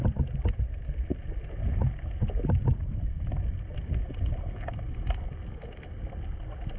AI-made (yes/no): no